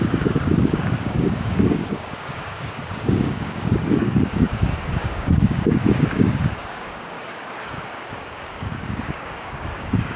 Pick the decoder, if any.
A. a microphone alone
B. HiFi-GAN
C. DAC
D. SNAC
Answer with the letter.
C